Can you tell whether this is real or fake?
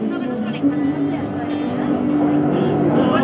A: real